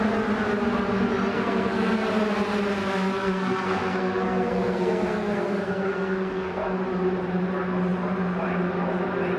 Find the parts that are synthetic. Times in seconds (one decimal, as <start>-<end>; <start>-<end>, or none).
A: 1.3-1.9; 2.8-6.8